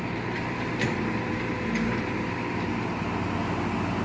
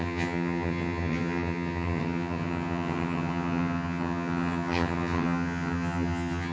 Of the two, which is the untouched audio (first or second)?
first